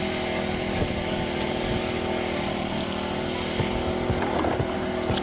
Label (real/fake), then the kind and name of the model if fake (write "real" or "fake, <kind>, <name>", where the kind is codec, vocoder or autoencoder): real